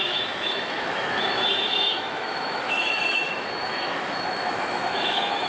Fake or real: fake